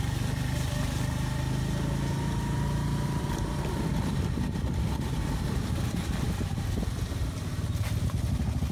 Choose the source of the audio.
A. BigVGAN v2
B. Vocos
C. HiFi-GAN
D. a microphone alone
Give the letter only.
D